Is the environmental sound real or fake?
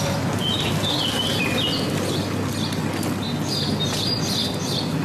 real